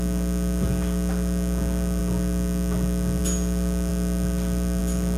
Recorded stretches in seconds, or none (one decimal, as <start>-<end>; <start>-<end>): 0.0-5.2